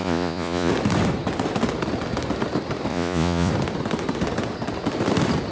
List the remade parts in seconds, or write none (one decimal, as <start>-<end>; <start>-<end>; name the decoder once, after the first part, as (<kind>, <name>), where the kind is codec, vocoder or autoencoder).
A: 0.0-0.7 (vocoder, Vocos); 2.9-3.5

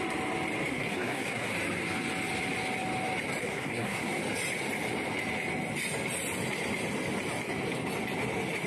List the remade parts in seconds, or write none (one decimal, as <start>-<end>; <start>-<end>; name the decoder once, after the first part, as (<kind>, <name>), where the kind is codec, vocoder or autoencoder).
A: 0.7-1.5 (codec, SNAC); 3.4-4.2

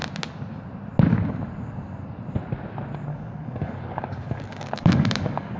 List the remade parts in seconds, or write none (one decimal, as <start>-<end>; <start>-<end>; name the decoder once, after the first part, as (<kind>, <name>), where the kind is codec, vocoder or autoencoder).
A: 3.1-5.6 (codec, DAC)

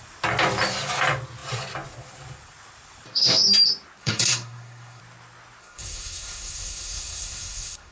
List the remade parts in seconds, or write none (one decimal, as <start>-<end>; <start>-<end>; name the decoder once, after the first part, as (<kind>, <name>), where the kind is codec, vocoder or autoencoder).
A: 4.0-5.0 (codec, SNAC); 5.6-7.9

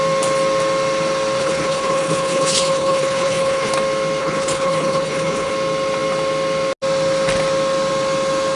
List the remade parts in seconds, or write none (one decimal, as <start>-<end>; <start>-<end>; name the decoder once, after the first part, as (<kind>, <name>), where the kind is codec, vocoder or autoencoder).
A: 1.4-3.7 (codec, HILCodec); 4.2-5.5

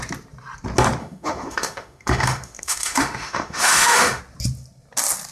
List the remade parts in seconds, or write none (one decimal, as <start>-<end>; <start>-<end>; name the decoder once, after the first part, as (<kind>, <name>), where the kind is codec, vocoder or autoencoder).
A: 1.0-4.2 (autoencoder, DAC-VAE)

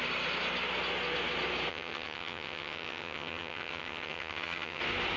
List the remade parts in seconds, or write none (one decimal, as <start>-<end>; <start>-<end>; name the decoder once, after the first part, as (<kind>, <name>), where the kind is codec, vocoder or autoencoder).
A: 1.7-4.8 (vocoder, HiFi-GAN)

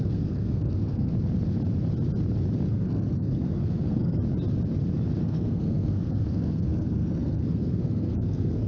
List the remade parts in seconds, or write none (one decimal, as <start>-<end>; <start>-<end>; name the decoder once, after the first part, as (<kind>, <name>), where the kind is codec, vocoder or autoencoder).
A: 0.0-1.1 (codec, SNAC); 2.7-4.2; 5.2-8.7